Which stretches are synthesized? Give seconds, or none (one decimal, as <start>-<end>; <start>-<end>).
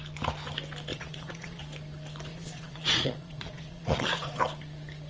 0.9-1.6; 2.3-4.4